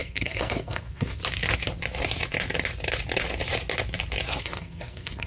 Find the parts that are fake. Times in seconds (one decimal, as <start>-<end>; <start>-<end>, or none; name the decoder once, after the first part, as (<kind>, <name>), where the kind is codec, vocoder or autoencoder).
0.0-1.2 (codec, SNAC); 4.4-5.3